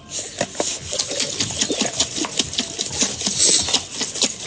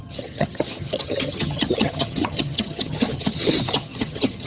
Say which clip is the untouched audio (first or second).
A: first